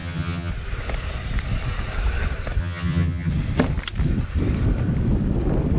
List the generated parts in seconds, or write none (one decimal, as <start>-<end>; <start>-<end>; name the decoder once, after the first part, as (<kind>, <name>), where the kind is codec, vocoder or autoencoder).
0.0-0.5 (vocoder, HiFi-GAN); 2.6-3.3